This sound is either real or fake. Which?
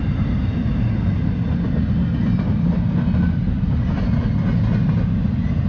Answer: real